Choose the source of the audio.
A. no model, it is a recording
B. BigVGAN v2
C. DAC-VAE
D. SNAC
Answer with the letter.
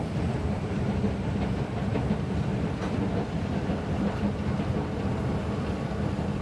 A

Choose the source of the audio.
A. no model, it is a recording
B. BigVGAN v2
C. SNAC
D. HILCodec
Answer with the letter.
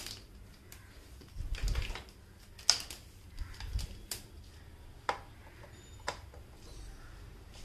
A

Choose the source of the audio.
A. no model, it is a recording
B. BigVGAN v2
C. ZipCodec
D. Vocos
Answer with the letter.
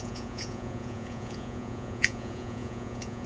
D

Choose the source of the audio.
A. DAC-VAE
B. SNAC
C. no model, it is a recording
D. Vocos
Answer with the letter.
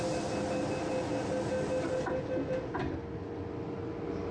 C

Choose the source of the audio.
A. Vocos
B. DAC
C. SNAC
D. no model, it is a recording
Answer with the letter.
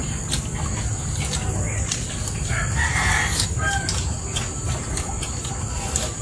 D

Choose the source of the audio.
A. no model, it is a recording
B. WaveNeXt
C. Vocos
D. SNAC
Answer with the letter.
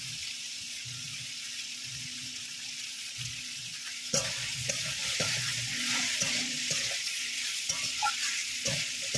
C